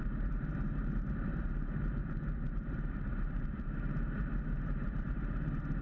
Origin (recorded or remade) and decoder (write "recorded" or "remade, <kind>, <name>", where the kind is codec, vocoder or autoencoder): remade, vocoder, BigVGAN v2